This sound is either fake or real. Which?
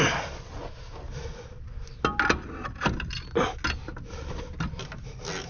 real